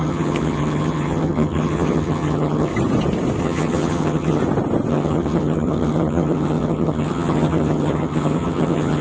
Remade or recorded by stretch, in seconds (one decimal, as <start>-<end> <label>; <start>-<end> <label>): 0.0-2.7 remade; 2.7-3.4 recorded; 3.4-4.4 remade; 4.4-4.9 recorded; 4.9-9.0 remade